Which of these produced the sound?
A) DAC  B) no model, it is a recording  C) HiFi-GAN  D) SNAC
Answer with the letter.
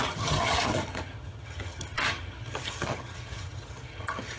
C